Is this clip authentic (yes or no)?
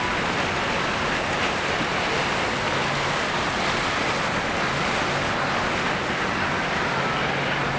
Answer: yes